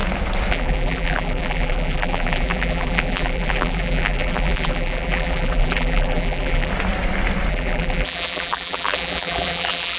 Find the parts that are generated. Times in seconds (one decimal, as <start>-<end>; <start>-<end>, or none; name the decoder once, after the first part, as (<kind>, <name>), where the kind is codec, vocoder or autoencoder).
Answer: 0.5-6.7 (vocoder, BigVGAN v2); 7.5-10.0